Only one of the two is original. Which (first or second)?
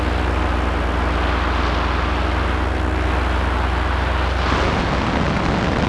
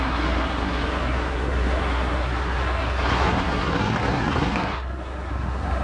first